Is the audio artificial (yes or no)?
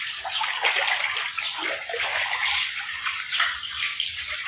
no